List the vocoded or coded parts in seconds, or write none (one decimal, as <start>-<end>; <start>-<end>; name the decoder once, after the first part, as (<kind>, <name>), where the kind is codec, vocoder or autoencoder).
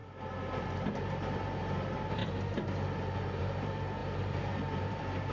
0.9-2.2 (vocoder, BigVGAN v2); 3.4-5.3